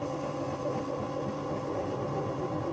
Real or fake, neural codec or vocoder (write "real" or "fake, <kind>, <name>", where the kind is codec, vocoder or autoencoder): real